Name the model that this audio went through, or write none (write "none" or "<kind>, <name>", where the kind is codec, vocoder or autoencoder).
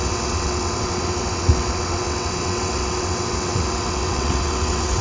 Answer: vocoder, WaveNeXt